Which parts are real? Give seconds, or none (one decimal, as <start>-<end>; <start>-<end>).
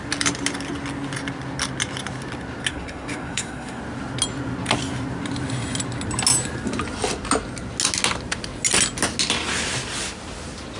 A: 0.0-2.7; 3.8-10.8